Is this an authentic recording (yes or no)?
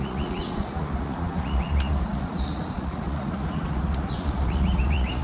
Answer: no